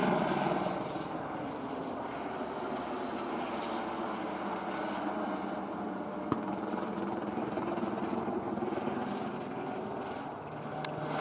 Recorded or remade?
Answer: recorded